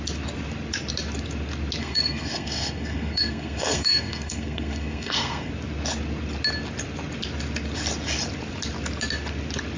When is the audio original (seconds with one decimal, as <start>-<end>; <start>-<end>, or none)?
0.0-1.8; 5.5-9.8